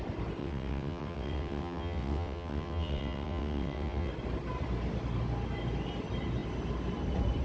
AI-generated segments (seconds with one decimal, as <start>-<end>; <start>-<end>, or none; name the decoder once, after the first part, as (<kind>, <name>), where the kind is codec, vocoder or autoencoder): 0.4-4.1 (vocoder, WaveNeXt)